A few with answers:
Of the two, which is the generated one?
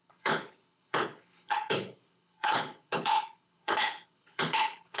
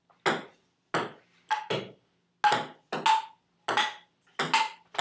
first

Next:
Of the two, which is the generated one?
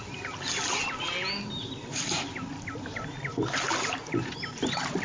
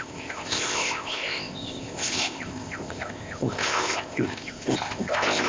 second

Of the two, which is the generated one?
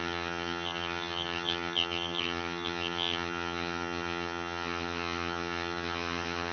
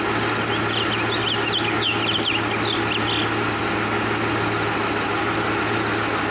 first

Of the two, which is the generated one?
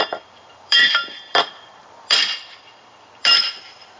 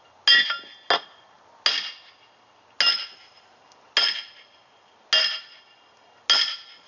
first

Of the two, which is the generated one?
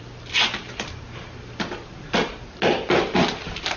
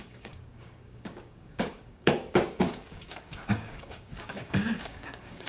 second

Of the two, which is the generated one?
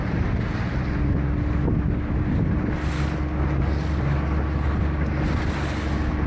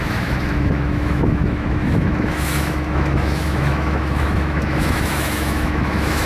second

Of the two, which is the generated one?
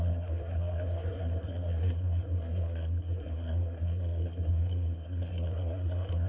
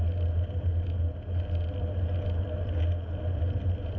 first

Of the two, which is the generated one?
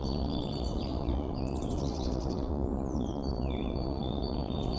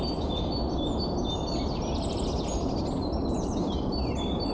first